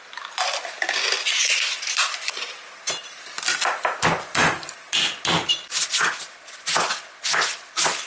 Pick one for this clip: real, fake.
real